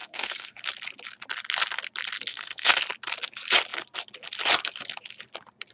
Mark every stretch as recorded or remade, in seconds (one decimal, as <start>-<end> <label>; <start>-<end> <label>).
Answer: 0.0-0.6 remade; 0.6-2.3 recorded; 2.3-2.8 remade; 2.8-5.7 recorded